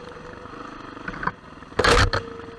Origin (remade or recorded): recorded